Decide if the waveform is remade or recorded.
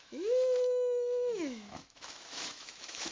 remade